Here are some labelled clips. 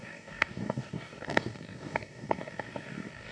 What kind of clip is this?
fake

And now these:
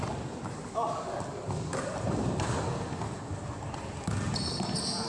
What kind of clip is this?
real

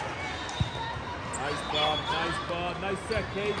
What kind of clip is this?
real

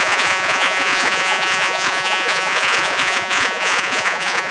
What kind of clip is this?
fake